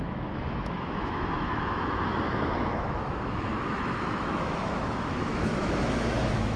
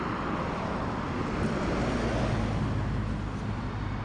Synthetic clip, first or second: first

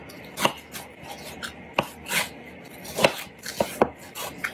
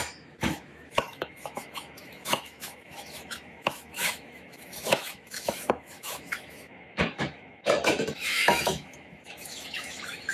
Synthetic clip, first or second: second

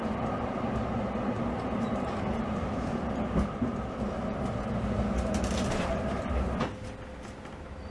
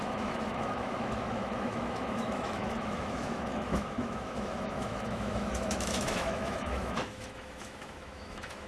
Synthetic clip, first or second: second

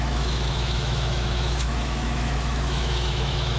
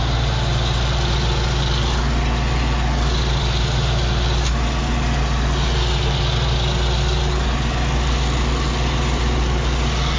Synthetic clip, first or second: first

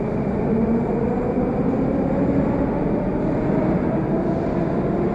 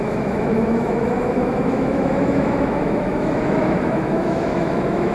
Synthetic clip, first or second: second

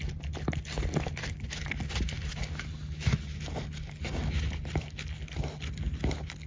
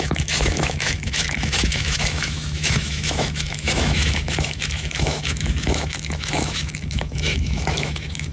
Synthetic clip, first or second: second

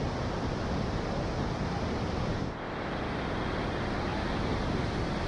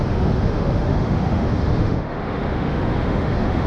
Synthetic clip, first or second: second